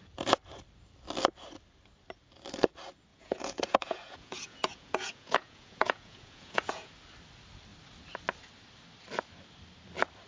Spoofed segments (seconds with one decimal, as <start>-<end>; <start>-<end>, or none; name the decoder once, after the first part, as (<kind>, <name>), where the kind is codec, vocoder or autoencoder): 3.1-6.9 (vocoder, Vocos)